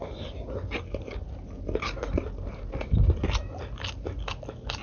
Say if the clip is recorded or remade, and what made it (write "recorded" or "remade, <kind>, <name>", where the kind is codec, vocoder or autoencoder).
recorded